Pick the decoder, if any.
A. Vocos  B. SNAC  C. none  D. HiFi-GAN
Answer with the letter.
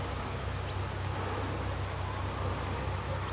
C